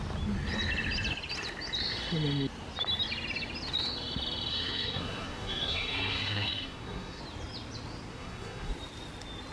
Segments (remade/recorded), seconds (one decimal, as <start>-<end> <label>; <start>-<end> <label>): 0.0-4.5 recorded; 4.5-7.2 remade; 7.2-8.1 recorded; 8.1-8.7 remade; 8.7-9.5 recorded